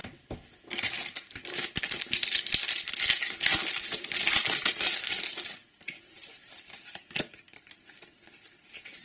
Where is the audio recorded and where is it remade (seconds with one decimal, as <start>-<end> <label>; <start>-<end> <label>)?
0.0-2.9 remade; 2.9-3.5 recorded; 3.5-6.6 remade; 6.6-9.0 recorded